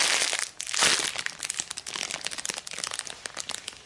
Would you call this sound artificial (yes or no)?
no